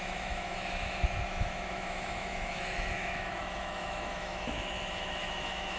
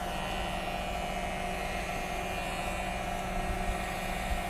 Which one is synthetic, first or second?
first